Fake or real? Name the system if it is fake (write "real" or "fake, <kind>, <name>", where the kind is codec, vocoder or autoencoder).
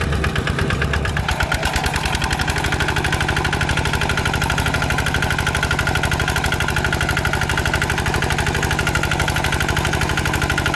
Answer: real